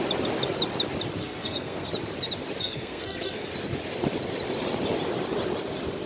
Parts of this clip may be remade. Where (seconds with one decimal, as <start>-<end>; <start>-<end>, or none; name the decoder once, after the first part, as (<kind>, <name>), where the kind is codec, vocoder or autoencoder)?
1.2-1.9 (codec, SNAC); 2.6-3.5